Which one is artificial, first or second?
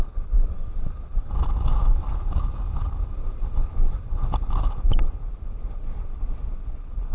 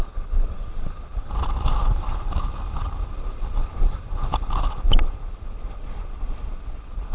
second